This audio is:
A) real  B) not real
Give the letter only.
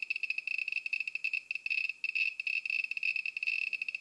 A